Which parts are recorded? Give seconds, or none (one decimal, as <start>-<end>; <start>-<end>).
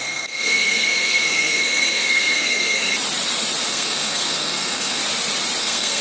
2.9-3.7; 5.0-5.6